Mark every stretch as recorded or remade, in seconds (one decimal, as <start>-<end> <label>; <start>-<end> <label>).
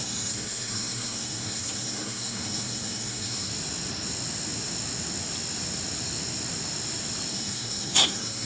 0.0-3.5 remade; 3.5-7.3 recorded; 7.3-8.5 remade